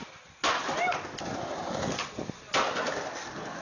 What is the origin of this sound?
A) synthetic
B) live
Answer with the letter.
B